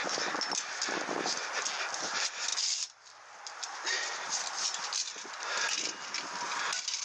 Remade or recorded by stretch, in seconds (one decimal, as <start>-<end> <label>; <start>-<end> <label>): 0.0-7.0 recorded